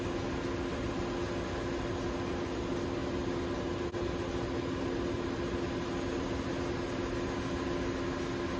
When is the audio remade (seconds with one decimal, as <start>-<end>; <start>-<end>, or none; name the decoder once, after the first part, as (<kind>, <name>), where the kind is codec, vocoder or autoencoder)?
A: none